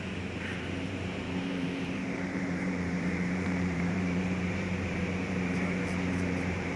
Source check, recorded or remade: remade